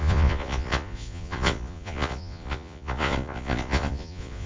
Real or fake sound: fake